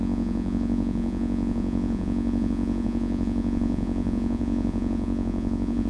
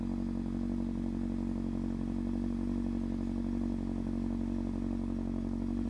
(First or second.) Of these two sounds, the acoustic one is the second